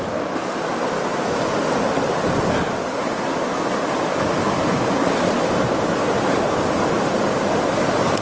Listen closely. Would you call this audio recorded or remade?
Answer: recorded